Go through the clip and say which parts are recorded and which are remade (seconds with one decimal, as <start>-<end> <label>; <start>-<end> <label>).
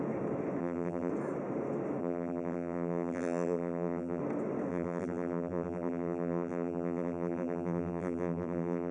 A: 0.0-0.6 recorded; 0.6-1.1 remade; 1.1-2.0 recorded; 2.0-4.2 remade; 4.2-4.7 recorded; 4.7-8.9 remade